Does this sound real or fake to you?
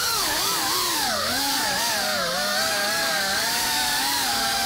fake